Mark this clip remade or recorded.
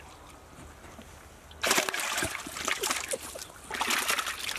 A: recorded